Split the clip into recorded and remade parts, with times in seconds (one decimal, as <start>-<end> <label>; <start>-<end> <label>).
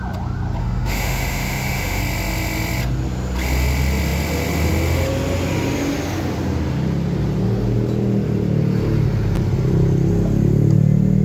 0.0-0.6 recorded; 0.6-2.0 remade; 2.0-11.2 recorded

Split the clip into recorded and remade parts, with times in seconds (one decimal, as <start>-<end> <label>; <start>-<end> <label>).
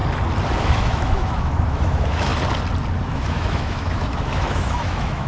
0.0-0.6 recorded; 0.6-2.3 remade; 2.3-3.0 recorded; 3.0-5.3 remade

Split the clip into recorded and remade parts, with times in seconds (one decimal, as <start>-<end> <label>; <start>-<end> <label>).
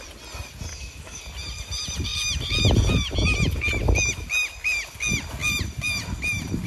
0.0-0.7 recorded; 0.7-1.2 remade; 1.2-6.7 recorded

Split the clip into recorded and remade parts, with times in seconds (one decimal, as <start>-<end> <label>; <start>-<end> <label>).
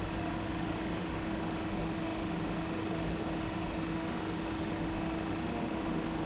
0.0-6.3 remade